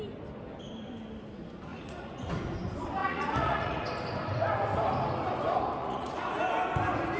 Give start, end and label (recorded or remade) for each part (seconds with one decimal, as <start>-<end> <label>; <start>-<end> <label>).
0.0-1.7 recorded; 1.7-2.3 remade; 2.3-3.0 recorded; 3.0-3.8 remade; 3.8-5.8 recorded; 5.8-6.4 remade; 6.4-7.2 recorded